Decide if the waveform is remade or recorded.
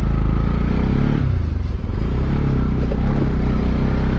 recorded